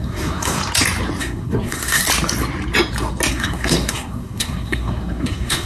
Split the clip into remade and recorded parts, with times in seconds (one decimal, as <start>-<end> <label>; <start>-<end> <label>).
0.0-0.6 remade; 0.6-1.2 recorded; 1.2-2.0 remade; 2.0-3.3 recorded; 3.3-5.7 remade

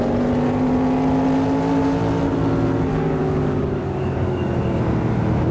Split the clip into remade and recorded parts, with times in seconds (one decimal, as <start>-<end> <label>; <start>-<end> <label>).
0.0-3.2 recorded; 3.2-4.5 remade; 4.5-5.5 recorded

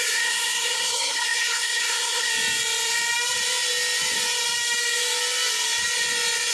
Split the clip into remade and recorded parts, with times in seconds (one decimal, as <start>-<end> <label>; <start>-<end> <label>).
0.0-2.3 remade; 2.3-6.5 recorded

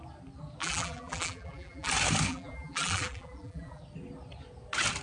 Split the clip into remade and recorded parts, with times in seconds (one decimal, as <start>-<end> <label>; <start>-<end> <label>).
0.0-0.6 recorded; 0.6-1.9 remade; 1.9-2.3 recorded; 2.3-3.8 remade; 3.8-5.0 recorded

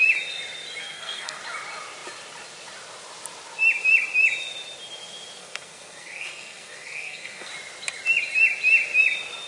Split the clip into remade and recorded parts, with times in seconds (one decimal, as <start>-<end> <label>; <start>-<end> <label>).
0.0-0.8 recorded; 0.8-1.4 remade; 1.4-5.4 recorded; 5.4-7.5 remade; 7.5-9.5 recorded

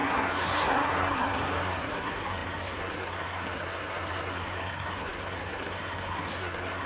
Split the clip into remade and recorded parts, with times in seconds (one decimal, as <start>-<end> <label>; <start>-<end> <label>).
0.0-6.9 remade